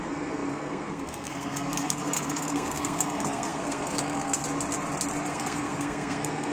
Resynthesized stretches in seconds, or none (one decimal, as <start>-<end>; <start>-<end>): 0.0-4.4; 5.3-6.5